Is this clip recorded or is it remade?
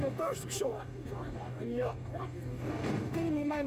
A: remade